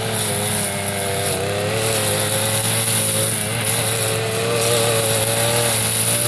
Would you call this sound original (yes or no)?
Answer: yes